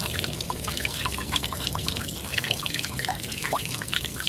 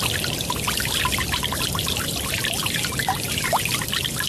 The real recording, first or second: second